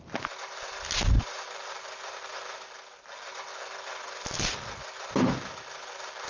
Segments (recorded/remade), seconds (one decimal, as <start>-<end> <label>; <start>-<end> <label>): 0.0-6.3 recorded